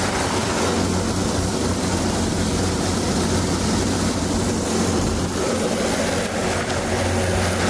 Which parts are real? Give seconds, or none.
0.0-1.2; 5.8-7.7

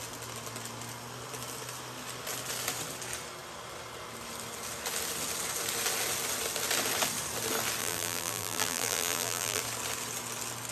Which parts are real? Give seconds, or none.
0.0-7.8; 9.6-10.7